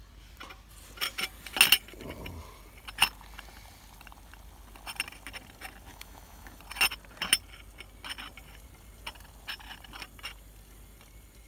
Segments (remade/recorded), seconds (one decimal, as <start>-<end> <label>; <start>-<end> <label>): 0.0-5.9 recorded; 5.9-6.6 remade; 6.6-11.5 recorded